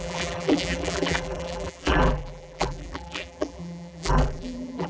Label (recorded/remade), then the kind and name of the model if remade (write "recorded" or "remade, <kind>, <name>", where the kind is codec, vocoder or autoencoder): remade, vocoder, BigVGAN v2